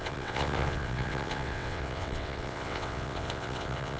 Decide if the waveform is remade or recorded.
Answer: remade